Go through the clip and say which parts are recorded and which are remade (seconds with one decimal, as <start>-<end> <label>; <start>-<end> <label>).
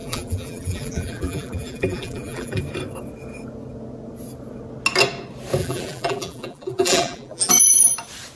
0.0-2.6 remade; 2.6-5.6 recorded; 5.6-7.5 remade; 7.5-8.4 recorded